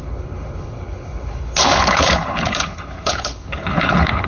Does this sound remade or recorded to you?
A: remade